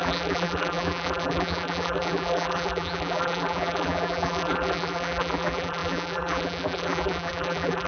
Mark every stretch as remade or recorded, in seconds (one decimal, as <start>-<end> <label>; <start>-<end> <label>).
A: 0.0-7.9 remade